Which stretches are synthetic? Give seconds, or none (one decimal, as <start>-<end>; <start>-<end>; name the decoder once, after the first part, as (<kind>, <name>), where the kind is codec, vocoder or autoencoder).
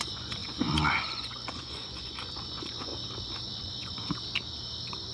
0.0-2.9 (vocoder, Vocos); 3.5-4.0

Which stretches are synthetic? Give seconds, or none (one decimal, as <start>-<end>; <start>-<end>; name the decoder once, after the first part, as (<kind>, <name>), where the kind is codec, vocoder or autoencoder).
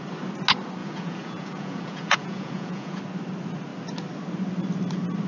0.8-3.0 (vocoder, Vocos)